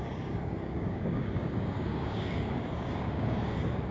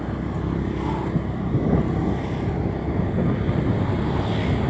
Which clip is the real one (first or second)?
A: second